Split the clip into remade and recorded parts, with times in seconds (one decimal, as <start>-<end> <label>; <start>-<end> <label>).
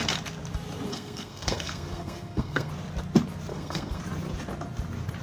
0.0-0.9 recorded; 0.9-2.7 remade; 2.7-3.5 recorded; 3.5-4.0 remade; 4.0-5.2 recorded